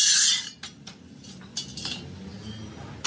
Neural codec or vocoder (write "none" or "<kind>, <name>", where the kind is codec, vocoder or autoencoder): none